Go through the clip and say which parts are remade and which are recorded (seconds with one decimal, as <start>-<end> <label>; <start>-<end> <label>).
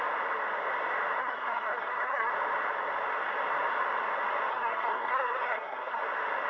0.0-1.2 recorded; 1.2-2.3 remade; 2.3-4.5 recorded; 4.5-6.0 remade; 6.0-6.5 recorded